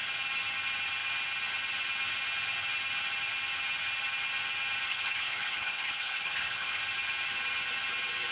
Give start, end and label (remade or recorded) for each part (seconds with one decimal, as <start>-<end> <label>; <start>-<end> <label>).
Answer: 0.0-4.9 recorded; 4.9-6.8 remade; 6.8-8.3 recorded